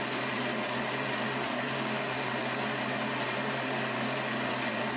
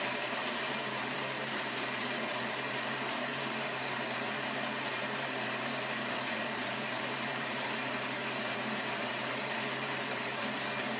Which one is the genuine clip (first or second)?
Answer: first